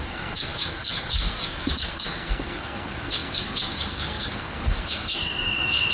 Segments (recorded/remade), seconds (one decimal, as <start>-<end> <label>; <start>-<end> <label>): 0.0-5.9 remade